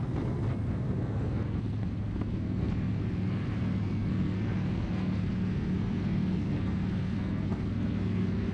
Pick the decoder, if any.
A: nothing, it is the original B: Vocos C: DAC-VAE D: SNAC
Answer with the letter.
D